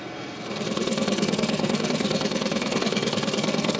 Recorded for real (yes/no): no